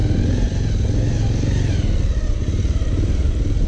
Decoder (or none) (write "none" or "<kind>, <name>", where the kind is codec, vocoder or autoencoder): none